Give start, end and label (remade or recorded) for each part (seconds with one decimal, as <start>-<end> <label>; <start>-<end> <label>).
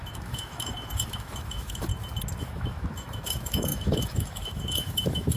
0.0-1.9 remade; 1.9-2.4 recorded; 2.4-5.4 remade